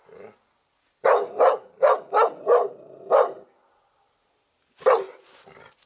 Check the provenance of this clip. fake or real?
real